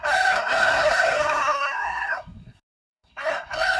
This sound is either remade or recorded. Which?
remade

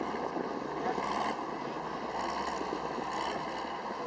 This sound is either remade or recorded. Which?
recorded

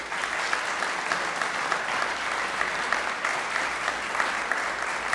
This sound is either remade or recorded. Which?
remade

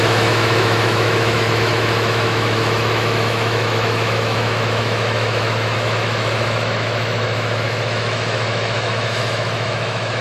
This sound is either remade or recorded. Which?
remade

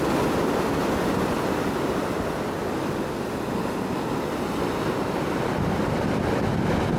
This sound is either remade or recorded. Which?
recorded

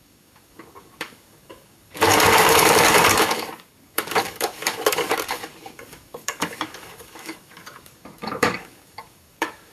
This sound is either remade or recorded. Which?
remade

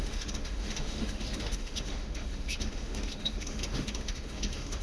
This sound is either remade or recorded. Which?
remade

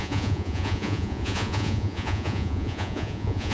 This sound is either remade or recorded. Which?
remade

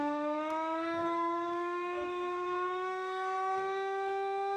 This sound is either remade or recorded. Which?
remade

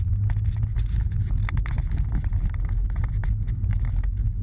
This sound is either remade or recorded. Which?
recorded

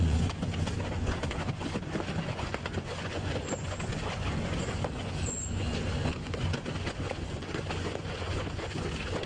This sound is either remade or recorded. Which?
remade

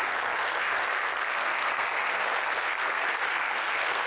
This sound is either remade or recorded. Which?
remade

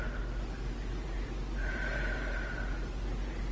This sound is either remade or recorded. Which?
recorded